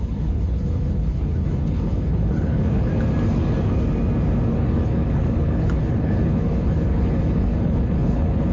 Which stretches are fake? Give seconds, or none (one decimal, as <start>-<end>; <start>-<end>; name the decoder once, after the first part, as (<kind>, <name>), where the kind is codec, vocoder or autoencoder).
0.0-2.9 (codec, HILCodec); 4.5-8.5